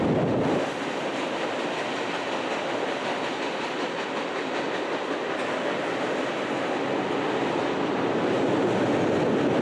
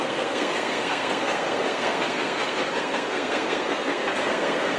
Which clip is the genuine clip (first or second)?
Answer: first